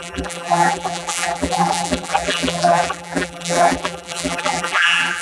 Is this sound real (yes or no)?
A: no